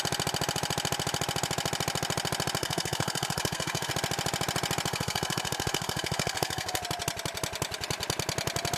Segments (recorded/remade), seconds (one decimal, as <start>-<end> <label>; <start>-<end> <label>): 0.0-2.6 recorded; 2.6-3.9 remade; 3.9-4.9 recorded; 4.9-6.8 remade; 6.8-8.8 recorded